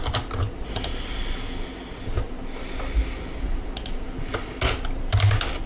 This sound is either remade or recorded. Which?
recorded